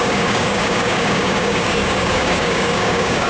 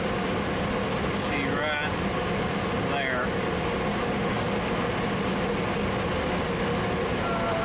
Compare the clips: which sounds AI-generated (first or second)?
first